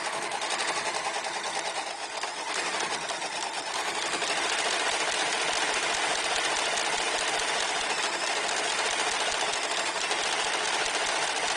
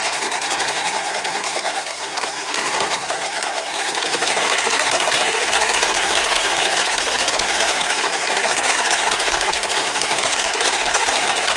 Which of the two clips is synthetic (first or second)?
second